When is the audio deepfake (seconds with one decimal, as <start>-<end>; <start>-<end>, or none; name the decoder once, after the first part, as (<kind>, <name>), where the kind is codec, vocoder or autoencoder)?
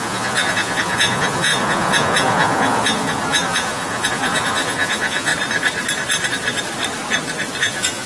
0.0-5.3 (vocoder, Vocos); 7.6-8.1